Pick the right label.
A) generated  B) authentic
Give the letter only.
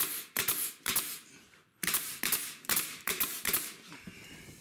A